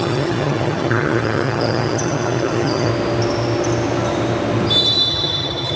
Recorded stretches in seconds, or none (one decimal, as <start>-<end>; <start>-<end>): 2.9-5.1